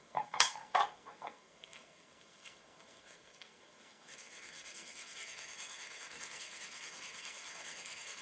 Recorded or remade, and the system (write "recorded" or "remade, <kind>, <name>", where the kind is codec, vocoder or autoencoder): remade, codec, SNAC